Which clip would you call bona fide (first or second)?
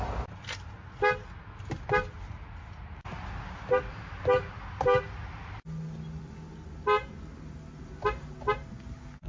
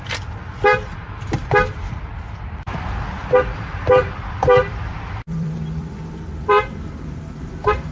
first